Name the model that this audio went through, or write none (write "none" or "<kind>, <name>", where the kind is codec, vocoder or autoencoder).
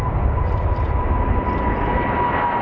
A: none